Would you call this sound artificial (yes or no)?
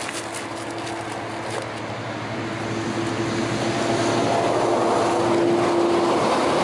no